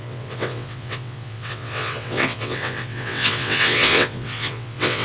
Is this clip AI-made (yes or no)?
yes